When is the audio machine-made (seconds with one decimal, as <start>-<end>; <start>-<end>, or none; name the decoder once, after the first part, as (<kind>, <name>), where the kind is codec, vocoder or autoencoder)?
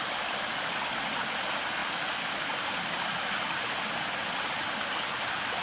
none